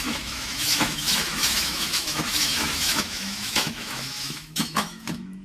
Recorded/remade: remade